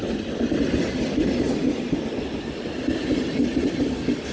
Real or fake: real